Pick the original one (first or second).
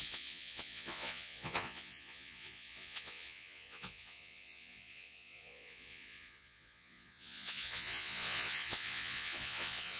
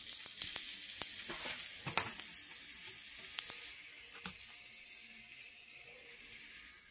second